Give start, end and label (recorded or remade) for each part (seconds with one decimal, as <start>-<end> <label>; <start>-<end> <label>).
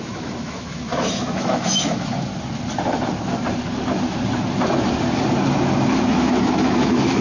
0.0-2.3 remade; 2.3-5.9 recorded; 5.9-7.2 remade